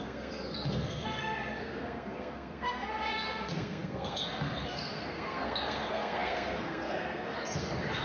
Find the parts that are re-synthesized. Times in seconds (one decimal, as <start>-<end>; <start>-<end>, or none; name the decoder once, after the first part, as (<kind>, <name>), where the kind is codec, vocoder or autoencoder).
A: 0.0-8.0 (codec, SNAC)